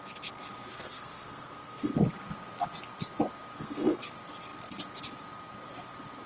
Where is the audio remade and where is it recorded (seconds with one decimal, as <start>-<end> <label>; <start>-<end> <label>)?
0.0-0.7 recorded; 0.7-1.9 remade; 1.9-3.5 recorded; 3.5-4.1 remade; 4.1-6.3 recorded